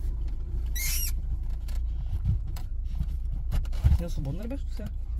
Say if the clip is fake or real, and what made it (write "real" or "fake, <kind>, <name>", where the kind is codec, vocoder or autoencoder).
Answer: fake, vocoder, BigVGAN v2